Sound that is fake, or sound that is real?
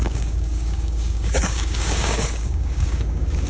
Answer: fake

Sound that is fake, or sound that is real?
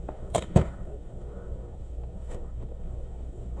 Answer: fake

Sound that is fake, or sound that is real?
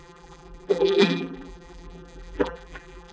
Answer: fake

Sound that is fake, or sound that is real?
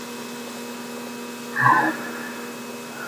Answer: real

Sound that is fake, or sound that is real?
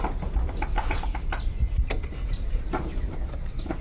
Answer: real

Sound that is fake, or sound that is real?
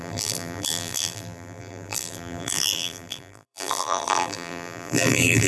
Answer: fake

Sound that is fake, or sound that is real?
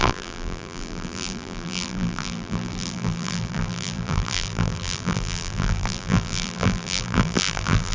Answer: fake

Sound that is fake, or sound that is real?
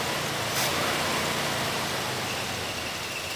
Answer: real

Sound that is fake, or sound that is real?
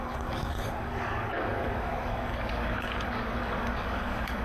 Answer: fake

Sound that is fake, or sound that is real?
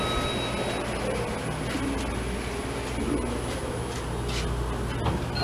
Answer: real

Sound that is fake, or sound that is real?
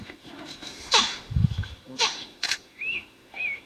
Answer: fake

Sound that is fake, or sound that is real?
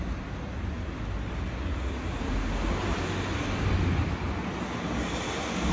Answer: real